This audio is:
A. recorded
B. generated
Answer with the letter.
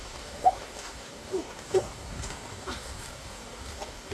B